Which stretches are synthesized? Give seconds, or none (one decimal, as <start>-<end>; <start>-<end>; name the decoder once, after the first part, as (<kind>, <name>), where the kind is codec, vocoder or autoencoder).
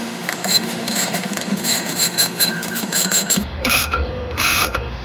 0.0-5.0 (autoencoder, DAC-VAE)